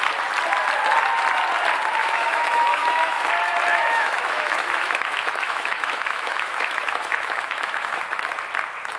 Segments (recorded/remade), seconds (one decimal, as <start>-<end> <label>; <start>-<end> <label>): 0.0-2.0 recorded; 2.0-3.3 remade; 3.3-3.7 recorded; 3.7-8.0 remade; 8.0-9.0 recorded